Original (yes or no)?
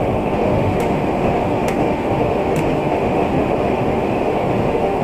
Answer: no